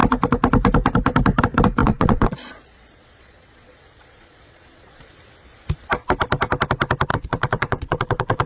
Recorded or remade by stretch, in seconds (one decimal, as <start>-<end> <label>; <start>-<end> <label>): 0.0-1.8 recorded; 1.8-5.1 remade; 5.1-7.1 recorded; 7.1-8.5 remade

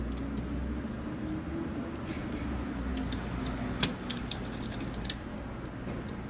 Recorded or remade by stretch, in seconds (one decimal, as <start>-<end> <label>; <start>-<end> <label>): 0.0-6.3 recorded